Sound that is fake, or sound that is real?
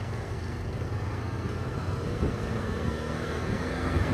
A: fake